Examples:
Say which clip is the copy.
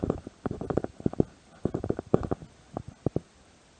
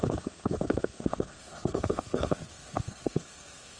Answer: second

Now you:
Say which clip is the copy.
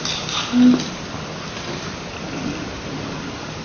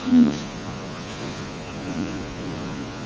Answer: second